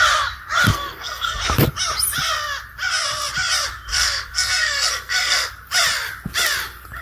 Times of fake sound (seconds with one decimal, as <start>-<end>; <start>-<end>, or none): 0.7-1.4; 3.9-5.5